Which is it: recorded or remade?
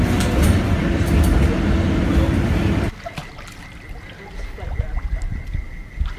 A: recorded